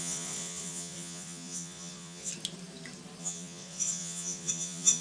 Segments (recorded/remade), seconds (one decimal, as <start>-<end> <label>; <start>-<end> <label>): 0.0-2.3 remade; 2.3-3.2 recorded; 3.2-5.0 remade